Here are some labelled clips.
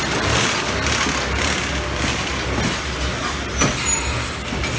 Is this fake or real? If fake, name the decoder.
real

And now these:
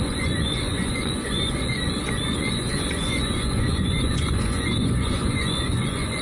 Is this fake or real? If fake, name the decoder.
fake, vocoder, Vocos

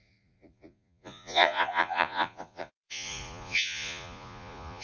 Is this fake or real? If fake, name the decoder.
fake, vocoder, Vocos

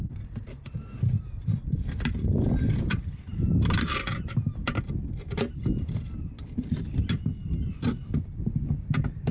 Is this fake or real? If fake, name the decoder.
real